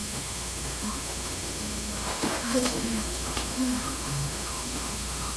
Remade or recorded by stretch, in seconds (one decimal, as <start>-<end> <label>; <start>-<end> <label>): 0.0-5.4 remade